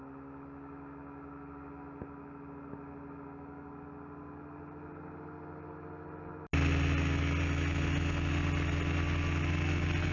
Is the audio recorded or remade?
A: recorded